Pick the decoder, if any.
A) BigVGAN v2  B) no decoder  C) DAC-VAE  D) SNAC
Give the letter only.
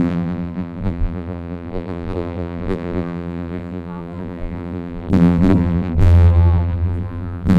A